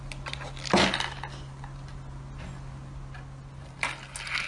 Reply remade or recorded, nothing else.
recorded